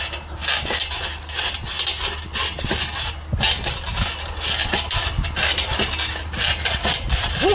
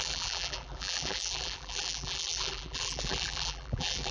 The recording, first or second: first